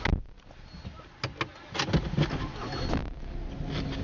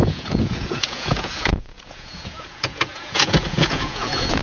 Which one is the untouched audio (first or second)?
first